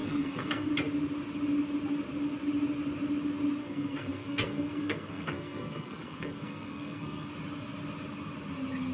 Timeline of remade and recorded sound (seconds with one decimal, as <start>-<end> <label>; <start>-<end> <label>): 0.0-0.7 remade; 0.7-3.6 recorded; 3.6-7.3 remade; 7.3-8.9 recorded